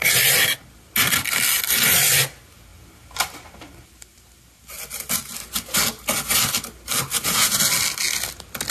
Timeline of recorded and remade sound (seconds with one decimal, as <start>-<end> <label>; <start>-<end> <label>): 0.0-7.1 recorded; 7.1-7.6 remade; 7.6-8.7 recorded